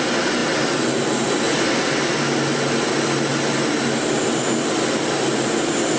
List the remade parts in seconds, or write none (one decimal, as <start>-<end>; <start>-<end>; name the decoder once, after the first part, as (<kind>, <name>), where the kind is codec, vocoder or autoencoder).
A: none